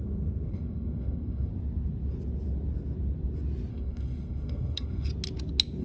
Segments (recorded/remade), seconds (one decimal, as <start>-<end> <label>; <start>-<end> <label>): 0.0-1.5 remade; 1.5-3.7 recorded; 3.7-5.1 remade; 5.1-5.8 recorded